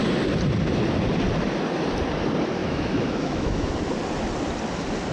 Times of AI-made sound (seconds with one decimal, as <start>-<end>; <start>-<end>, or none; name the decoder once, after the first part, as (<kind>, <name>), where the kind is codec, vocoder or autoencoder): 2.6-3.7 (autoencoder, DAC-VAE)